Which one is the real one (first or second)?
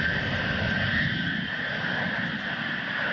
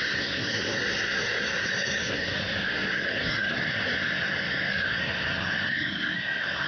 first